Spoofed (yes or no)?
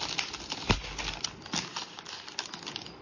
no